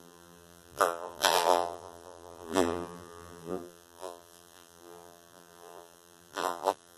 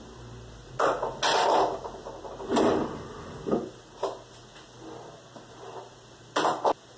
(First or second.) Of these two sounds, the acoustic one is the second